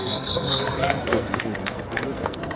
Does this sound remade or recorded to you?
remade